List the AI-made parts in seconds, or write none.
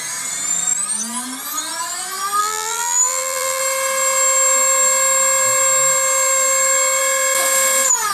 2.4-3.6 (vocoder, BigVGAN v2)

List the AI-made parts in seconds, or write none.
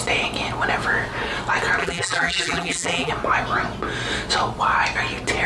1.8-3.1 (vocoder, BigVGAN v2)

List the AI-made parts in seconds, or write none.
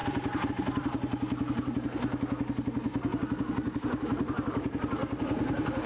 0.0-1.1 (vocoder, BigVGAN v2); 3.8-5.0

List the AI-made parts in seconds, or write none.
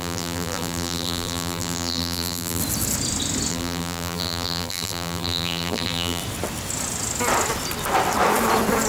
0.0-2.6 (vocoder, BigVGAN v2); 3.5-6.2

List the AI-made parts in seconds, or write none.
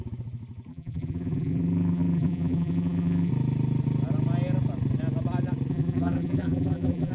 0.7-3.3 (vocoder, BigVGAN v2); 5.7-7.1